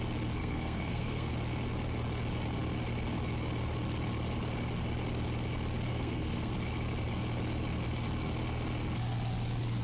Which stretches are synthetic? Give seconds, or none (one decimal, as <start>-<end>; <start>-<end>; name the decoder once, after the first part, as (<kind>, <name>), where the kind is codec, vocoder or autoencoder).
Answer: 0.4-1.3 (codec, SNAC); 5.9-6.5